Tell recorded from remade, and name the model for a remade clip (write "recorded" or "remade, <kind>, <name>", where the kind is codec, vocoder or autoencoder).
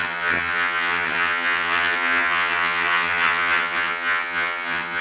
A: remade, vocoder, HiFi-GAN